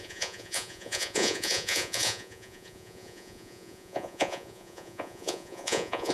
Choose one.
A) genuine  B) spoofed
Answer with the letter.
B